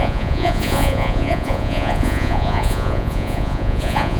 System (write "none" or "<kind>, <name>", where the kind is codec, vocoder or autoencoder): vocoder, Vocos